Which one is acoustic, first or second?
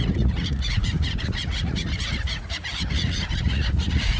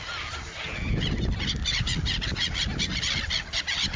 second